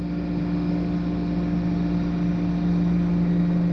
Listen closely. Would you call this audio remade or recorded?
recorded